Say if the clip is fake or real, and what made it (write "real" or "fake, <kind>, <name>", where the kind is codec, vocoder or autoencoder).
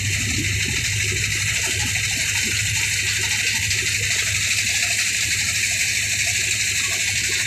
real